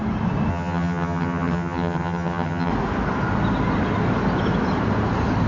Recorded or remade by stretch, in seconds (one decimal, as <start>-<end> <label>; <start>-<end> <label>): 0.0-0.5 recorded; 0.5-2.7 remade; 2.7-5.5 recorded